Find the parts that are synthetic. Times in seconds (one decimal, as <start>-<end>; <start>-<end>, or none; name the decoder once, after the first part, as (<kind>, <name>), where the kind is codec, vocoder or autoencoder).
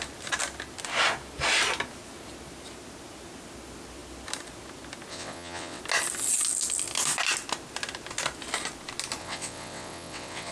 5.1-5.8 (vocoder, WaveNeXt); 9.2-10.5